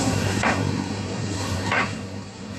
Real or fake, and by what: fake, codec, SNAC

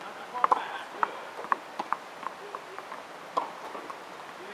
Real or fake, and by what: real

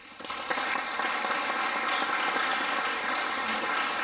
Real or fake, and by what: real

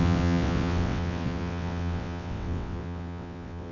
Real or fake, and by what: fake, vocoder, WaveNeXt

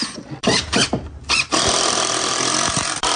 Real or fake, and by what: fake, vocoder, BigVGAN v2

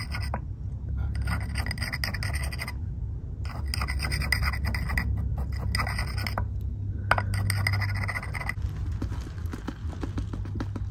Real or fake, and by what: real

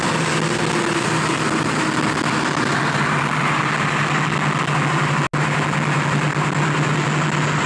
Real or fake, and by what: real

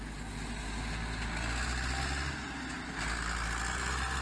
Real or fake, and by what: real